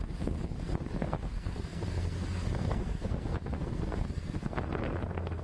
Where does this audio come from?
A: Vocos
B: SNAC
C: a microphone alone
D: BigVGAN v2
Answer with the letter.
B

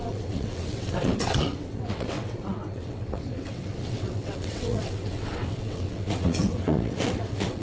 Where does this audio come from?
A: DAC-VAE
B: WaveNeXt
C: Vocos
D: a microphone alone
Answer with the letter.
B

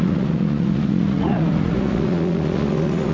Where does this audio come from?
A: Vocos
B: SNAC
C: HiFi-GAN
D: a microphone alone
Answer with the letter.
A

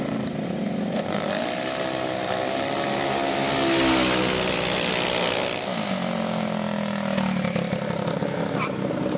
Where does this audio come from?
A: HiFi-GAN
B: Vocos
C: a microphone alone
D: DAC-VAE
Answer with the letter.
C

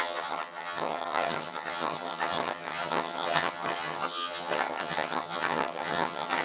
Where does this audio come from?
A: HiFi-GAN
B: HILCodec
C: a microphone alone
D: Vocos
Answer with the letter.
A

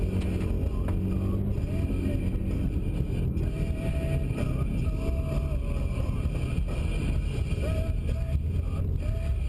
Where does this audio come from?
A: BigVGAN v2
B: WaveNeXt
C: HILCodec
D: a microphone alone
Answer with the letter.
D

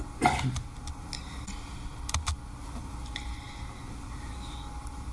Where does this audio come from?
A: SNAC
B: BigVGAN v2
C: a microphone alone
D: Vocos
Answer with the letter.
C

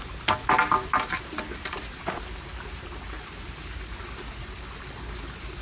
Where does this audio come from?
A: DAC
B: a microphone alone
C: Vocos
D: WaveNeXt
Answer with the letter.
B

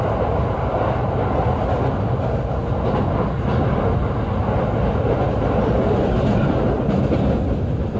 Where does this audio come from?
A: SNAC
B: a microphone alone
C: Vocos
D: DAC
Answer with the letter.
B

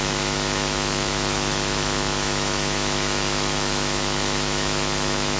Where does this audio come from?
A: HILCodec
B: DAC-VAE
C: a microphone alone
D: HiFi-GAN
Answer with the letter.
B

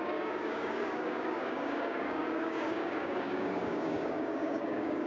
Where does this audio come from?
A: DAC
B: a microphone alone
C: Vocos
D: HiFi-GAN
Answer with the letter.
A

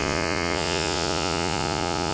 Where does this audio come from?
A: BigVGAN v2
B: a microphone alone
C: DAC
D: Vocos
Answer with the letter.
D